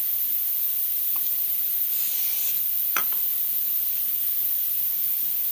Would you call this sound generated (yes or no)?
no